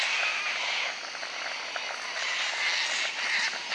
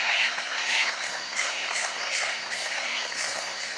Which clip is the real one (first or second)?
first